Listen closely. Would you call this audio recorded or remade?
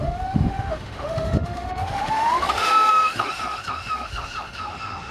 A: remade